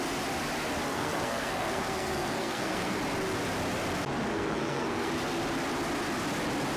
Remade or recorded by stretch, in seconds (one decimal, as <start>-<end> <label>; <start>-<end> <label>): 0.0-0.9 recorded; 0.9-3.0 remade; 3.0-4.3 recorded; 4.3-5.1 remade; 5.1-6.8 recorded